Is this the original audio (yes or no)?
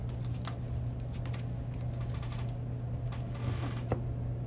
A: yes